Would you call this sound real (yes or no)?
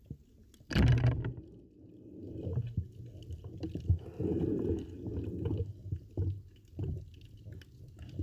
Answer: yes